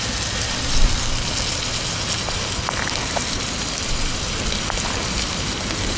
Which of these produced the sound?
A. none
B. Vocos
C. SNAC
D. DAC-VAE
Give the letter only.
A